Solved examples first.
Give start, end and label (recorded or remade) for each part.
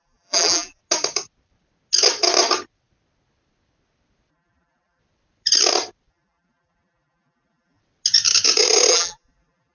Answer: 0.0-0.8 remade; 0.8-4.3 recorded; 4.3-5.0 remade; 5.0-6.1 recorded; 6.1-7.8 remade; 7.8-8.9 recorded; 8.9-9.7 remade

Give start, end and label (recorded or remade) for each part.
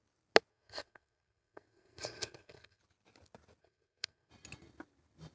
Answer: 0.0-0.5 recorded; 0.5-2.8 remade; 2.8-3.6 recorded; 3.6-4.3 remade; 4.3-5.3 recorded